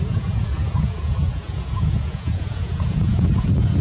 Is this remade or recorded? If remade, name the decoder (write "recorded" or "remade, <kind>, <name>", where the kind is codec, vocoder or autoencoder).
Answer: remade, vocoder, Vocos